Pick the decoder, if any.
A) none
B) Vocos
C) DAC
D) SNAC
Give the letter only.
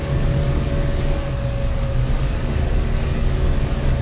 C